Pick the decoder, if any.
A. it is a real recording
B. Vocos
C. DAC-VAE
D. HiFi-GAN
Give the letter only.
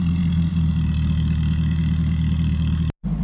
A